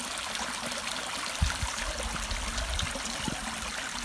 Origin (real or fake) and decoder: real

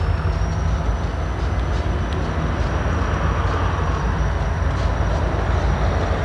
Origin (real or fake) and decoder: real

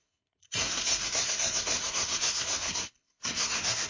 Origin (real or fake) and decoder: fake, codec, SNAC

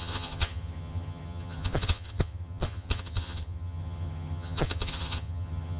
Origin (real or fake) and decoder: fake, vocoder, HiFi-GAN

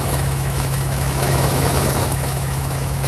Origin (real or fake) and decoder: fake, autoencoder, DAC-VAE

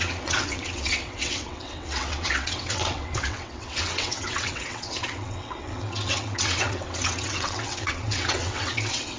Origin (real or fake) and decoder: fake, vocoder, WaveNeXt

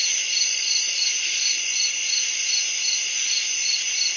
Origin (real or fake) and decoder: real